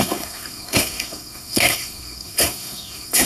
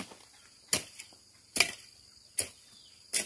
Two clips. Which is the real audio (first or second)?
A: second